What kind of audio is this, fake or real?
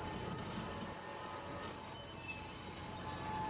real